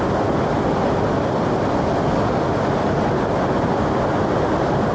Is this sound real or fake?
real